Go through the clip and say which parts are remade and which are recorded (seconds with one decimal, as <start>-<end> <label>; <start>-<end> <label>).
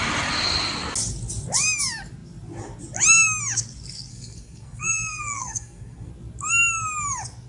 0.0-4.1 recorded; 4.1-6.1 remade; 6.1-7.5 recorded